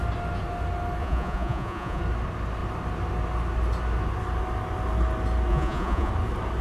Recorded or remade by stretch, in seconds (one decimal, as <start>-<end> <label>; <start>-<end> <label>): 0.0-1.0 recorded; 1.0-2.0 remade; 2.0-5.5 recorded; 5.5-6.1 remade; 6.1-6.6 recorded